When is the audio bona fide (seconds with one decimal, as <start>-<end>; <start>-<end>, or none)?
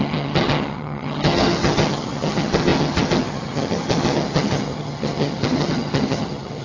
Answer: none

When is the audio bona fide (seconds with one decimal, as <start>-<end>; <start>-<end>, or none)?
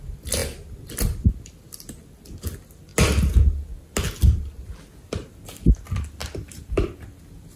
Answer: 0.0-6.2; 6.9-7.6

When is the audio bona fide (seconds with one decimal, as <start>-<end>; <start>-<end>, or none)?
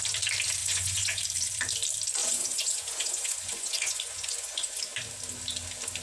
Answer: 0.0-0.6; 1.2-2.2; 4.8-6.0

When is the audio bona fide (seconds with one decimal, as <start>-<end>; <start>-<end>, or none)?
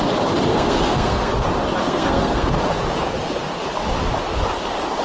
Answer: 0.0-0.5; 1.3-1.8; 2.5-5.0